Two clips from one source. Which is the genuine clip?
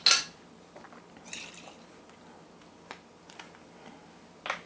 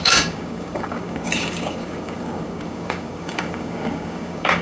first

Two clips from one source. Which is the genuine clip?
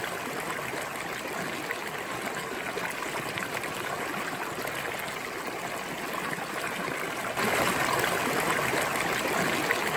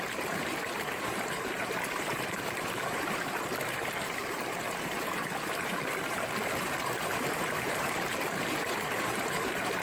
first